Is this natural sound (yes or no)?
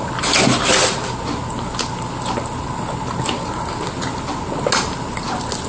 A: yes